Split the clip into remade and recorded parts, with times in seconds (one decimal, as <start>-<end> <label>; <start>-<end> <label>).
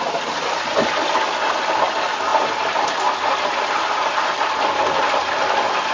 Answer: 0.0-5.9 recorded